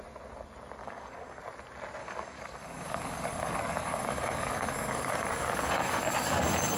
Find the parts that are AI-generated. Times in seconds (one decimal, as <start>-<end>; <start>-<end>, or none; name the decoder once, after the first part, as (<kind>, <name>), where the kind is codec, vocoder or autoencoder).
0.8-1.4 (codec, DAC); 2.0-6.1